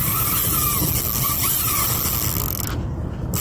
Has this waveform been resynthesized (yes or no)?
no